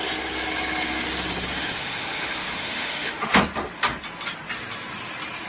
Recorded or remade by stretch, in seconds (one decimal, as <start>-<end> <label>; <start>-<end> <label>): 0.0-1.5 recorded; 1.5-3.4 remade; 3.4-5.5 recorded